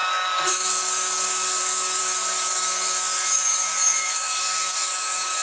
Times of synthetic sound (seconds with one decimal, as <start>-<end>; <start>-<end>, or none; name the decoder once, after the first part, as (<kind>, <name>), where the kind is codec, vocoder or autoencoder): 0.0-5.4 (codec, DAC)

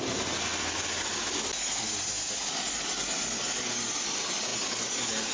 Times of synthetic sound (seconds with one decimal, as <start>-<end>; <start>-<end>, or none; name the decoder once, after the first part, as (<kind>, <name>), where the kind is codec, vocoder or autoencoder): none

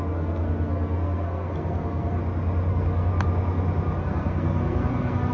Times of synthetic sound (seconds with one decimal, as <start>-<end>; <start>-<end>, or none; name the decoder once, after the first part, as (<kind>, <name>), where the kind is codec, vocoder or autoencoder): 0.0-2.2 (codec, SNAC); 2.7-3.1; 4.0-5.3

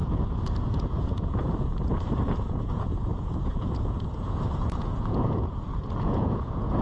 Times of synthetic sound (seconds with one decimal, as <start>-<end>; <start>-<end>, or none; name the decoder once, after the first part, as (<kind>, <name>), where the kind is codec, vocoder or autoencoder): 0.0-6.8 (vocoder, Vocos)